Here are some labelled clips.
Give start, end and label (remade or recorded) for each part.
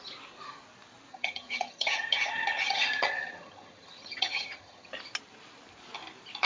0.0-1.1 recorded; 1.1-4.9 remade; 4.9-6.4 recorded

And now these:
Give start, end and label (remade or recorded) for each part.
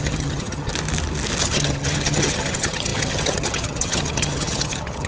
0.0-0.7 remade; 0.7-1.4 recorded; 1.4-5.1 remade